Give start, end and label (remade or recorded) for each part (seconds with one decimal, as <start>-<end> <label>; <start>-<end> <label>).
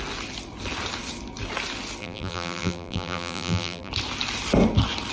0.0-2.0 recorded; 2.0-3.9 remade; 3.9-5.1 recorded